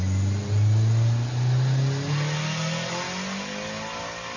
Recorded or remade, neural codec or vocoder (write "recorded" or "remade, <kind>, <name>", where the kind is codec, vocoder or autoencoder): recorded